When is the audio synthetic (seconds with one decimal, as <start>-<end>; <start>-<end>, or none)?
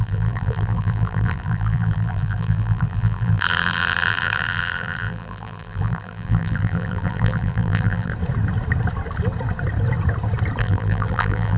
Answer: 0.0-8.1; 10.6-11.6